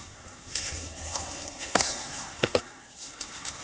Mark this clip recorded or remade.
remade